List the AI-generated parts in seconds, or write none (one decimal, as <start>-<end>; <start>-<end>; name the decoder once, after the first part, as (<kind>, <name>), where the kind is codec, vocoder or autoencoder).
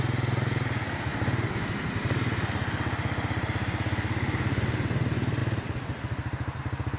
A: none